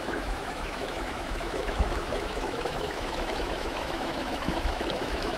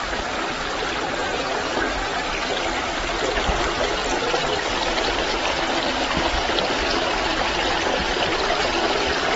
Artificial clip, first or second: first